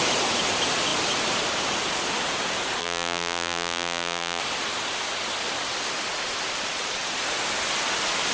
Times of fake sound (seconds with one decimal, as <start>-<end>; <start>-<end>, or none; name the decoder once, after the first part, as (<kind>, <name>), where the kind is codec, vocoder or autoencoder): 2.8-4.4 (vocoder, BigVGAN v2)